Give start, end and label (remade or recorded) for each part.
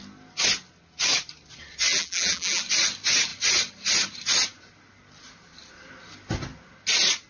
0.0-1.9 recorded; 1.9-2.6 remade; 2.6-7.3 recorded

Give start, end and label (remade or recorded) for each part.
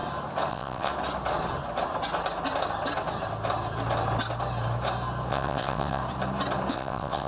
0.0-0.5 recorded; 0.5-0.9 remade; 0.9-5.3 recorded; 5.3-6.0 remade; 6.0-6.7 recorded; 6.7-7.3 remade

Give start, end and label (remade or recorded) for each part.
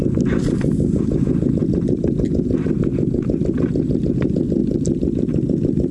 0.0-4.6 recorded; 4.6-5.9 remade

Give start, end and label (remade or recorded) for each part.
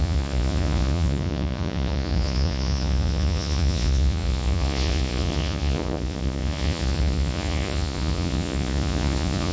0.0-9.5 remade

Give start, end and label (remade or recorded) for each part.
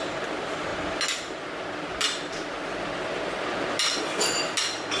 0.0-5.0 recorded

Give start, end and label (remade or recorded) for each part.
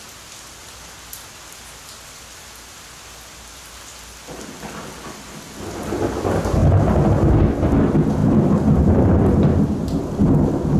0.0-8.2 recorded; 8.2-10.3 remade; 10.3-10.8 recorded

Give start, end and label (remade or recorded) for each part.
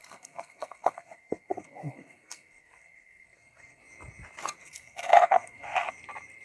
0.0-3.8 remade; 3.8-4.6 recorded; 4.6-5.9 remade; 5.9-6.4 recorded